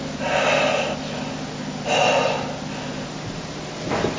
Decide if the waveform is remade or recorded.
recorded